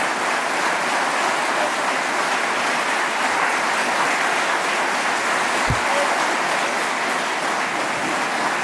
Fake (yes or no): no